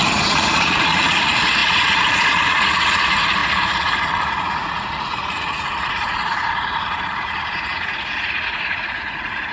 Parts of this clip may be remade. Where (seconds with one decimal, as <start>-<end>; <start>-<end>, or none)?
0.0-9.5